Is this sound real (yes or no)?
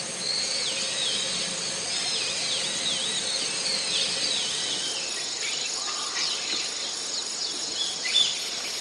yes